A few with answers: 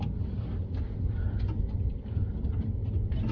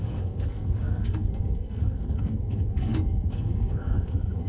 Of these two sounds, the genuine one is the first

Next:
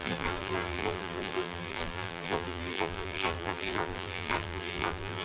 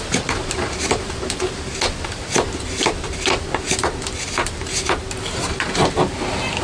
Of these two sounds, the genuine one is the second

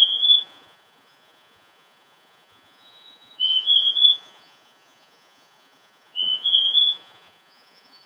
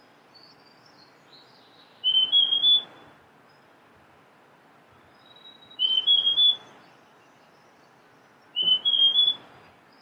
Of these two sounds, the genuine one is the second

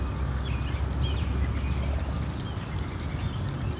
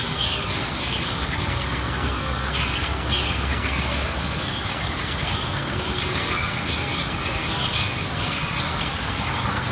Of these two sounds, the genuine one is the first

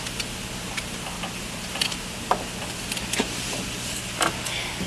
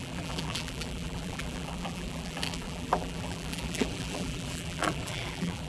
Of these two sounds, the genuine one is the first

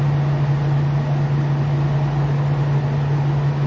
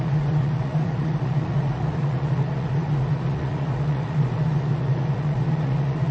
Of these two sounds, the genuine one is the first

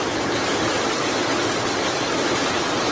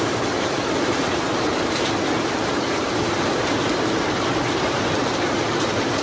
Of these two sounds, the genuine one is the first